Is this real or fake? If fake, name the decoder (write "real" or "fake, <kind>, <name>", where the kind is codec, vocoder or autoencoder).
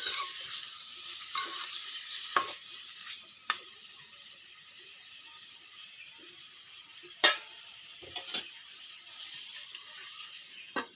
fake, vocoder, BigVGAN v2